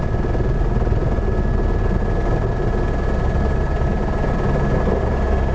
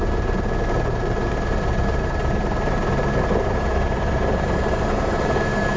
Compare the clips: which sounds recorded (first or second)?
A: first